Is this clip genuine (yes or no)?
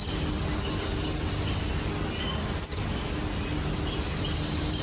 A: yes